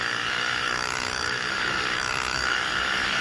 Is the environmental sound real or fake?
fake